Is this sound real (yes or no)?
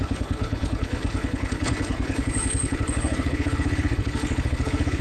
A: no